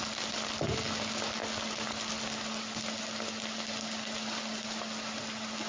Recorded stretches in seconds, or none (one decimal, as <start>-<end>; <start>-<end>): 0.0-5.7